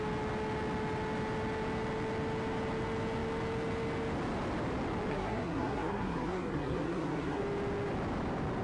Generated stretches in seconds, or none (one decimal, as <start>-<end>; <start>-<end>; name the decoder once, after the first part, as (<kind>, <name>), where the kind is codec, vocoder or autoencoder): 5.1-7.4 (codec, SNAC)